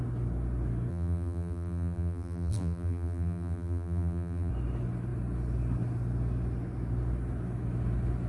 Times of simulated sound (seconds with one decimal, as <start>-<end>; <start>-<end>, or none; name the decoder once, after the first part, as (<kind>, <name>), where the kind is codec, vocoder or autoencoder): 0.9-4.5 (vocoder, BigVGAN v2)